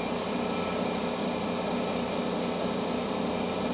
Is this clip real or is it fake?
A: real